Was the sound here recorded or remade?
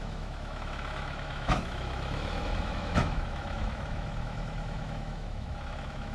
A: remade